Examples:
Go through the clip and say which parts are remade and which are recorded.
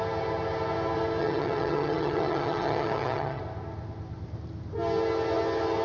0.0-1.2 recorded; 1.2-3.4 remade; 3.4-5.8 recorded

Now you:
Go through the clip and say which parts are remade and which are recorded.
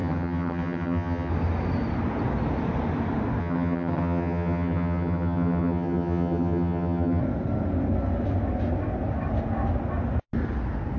0.0-1.3 remade; 1.3-3.4 recorded; 3.4-7.2 remade; 7.2-11.0 recorded